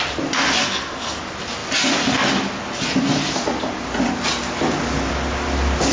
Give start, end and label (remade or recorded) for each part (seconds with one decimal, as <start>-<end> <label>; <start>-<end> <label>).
0.0-0.6 recorded; 0.6-1.2 remade; 1.2-5.9 recorded